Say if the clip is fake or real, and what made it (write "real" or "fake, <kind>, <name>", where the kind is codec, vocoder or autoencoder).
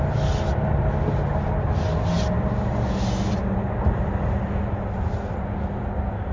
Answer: real